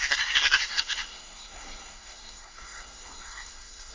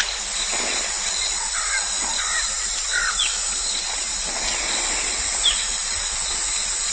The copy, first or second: first